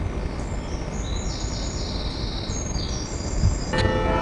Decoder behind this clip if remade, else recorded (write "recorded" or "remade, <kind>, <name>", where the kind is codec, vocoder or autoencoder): recorded